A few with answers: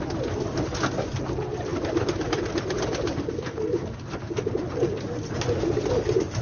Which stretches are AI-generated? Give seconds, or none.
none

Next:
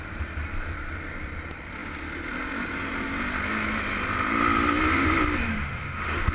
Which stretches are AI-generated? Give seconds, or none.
5.5-6.3

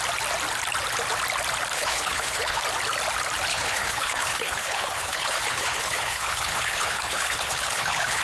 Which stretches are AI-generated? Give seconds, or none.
1.7-2.6; 3.5-8.2

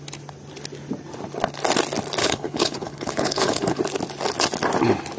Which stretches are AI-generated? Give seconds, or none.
2.2-3.8

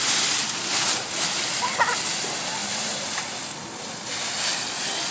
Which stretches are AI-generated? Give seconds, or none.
2.6-3.2

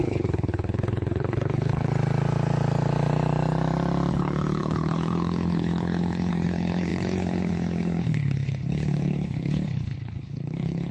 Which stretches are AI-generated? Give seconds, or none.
0.0-1.9; 4.1-10.9

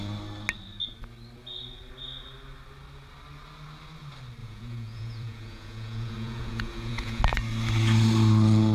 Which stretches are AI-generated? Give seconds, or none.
4.4-7.2

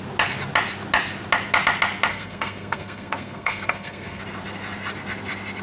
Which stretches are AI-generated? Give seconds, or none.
2.1-4.2